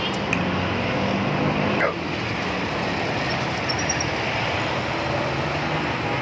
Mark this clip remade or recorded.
recorded